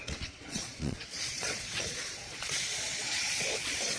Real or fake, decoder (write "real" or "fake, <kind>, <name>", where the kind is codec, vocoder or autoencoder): fake, vocoder, Vocos